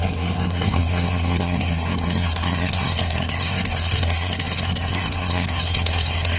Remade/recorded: remade